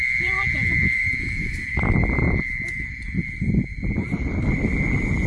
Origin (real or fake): fake